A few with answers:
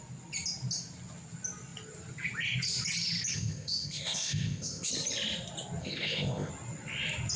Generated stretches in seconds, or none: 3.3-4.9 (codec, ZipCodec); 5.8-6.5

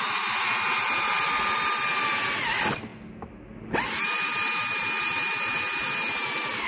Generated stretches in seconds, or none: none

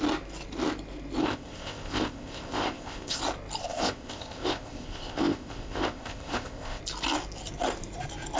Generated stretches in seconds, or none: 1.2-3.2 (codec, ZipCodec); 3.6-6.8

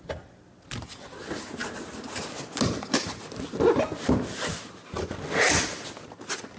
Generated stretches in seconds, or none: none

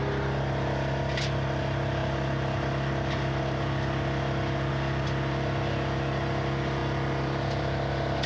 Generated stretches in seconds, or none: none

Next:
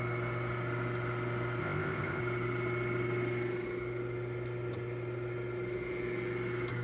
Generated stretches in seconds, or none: 1.6-2.2 (codec, ZipCodec)

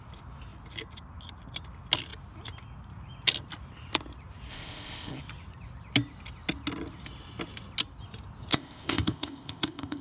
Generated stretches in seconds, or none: 4.5-5.2 (codec, ZipCodec); 8.5-10.0